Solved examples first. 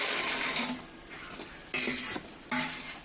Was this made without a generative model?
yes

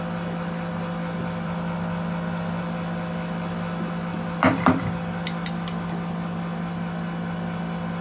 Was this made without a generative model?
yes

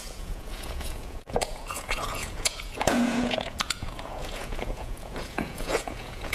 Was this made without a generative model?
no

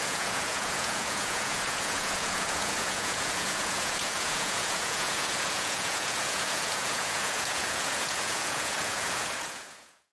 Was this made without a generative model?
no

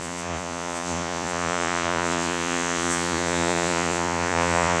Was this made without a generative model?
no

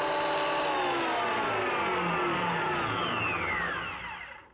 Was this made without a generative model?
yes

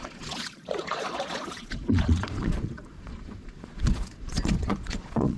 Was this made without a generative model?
no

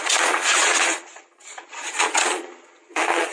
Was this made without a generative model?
no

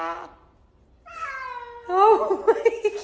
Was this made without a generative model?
yes